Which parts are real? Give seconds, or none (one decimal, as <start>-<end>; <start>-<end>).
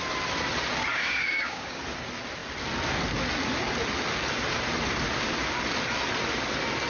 0.0-0.9; 1.8-6.9